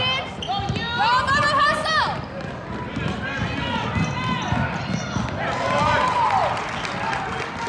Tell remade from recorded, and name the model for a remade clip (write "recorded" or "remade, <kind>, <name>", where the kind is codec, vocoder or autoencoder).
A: recorded